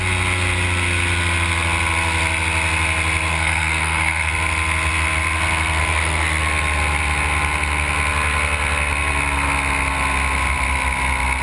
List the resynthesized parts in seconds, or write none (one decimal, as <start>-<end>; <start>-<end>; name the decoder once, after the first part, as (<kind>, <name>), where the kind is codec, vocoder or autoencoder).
3.3-4.3 (codec, SNAC); 5.8-6.4